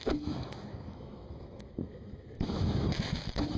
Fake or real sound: fake